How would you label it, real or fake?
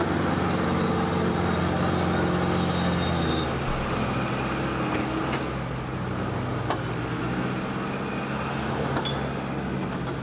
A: real